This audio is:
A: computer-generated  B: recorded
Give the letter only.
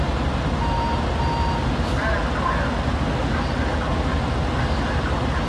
B